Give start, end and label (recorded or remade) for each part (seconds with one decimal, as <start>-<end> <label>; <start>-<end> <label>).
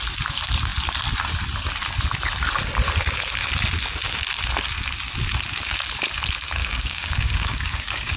0.0-6.6 recorded; 6.6-8.2 remade